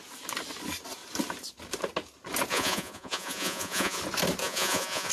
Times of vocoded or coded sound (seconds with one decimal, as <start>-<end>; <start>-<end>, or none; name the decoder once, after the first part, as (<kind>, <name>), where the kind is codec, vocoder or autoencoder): 2.5-4.0 (vocoder, Vocos); 4.4-5.1